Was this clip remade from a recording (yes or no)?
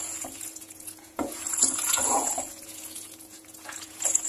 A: yes